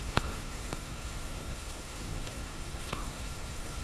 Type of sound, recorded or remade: remade